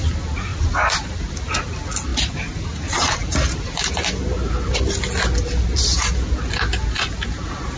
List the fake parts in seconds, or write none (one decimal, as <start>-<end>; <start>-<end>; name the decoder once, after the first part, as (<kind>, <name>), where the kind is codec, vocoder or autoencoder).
2.1-3.9 (vocoder, BigVGAN v2)